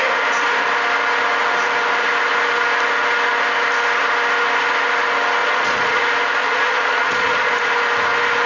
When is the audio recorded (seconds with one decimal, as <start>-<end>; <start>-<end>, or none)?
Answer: 0.0-5.4; 6.0-6.4; 7.5-8.5